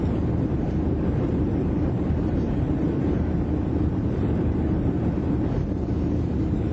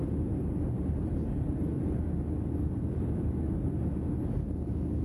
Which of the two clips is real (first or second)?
second